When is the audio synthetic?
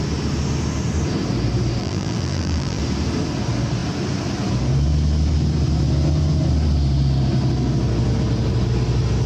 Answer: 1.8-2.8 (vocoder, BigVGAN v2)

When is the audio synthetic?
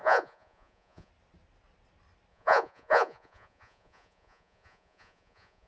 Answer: 0.0-1.1 (vocoder, Vocos); 2.3-5.7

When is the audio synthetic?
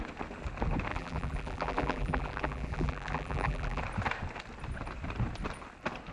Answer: 0.9-3.8 (vocoder, BigVGAN v2)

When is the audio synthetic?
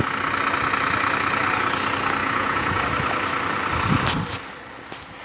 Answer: 2.2-2.8 (vocoder, Vocos)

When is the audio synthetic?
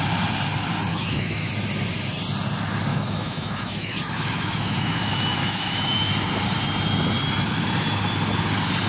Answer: 0.9-1.5 (autoencoder, DAC-VAE); 2.9-6.1